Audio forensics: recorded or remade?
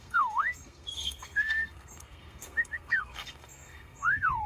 remade